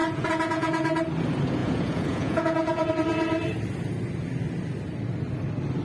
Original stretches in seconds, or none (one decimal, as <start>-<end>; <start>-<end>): 1.0-1.6; 2.9-5.8